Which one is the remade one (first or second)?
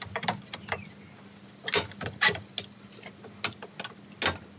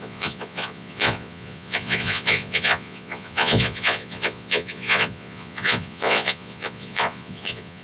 second